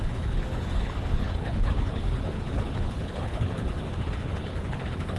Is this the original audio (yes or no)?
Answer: no